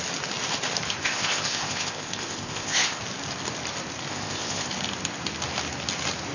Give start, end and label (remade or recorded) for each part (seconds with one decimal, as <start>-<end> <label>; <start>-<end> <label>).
0.0-1.0 recorded; 1.0-3.0 remade; 3.0-4.1 recorded; 4.1-4.7 remade; 4.7-6.3 recorded